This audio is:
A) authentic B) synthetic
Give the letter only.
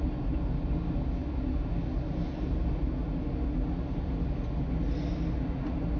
A